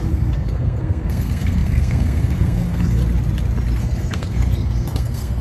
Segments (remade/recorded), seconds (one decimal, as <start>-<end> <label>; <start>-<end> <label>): 0.0-3.0 remade; 3.0-3.8 recorded; 3.8-5.4 remade

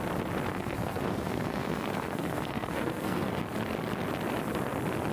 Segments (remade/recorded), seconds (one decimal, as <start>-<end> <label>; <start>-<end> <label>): 0.0-0.5 recorded; 0.5-3.4 remade; 3.4-5.1 recorded